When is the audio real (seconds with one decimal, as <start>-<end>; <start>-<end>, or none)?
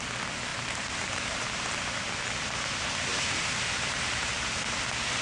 0.0-0.5; 1.7-3.1; 4.3-5.2